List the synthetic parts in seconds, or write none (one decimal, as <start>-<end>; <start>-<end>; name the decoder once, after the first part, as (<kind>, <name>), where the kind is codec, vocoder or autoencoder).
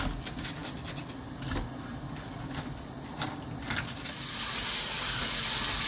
none